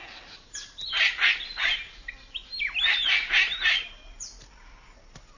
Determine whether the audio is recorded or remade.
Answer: recorded